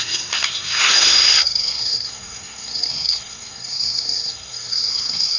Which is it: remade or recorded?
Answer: remade